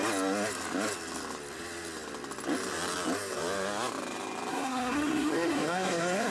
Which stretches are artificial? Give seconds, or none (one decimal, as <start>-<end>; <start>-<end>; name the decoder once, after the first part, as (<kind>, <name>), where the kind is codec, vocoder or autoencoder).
4.5-6.3 (codec, SNAC)